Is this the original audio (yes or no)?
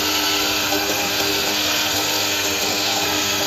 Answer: no